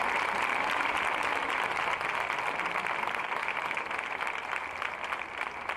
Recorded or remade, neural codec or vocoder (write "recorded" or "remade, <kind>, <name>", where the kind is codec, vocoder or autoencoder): recorded